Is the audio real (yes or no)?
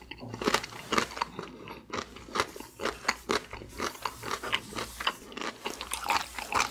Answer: yes